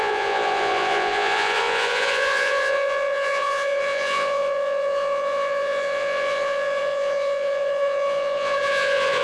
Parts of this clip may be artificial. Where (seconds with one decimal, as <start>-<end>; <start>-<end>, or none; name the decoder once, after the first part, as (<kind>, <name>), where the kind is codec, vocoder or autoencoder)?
0.0-9.2 (vocoder, Vocos)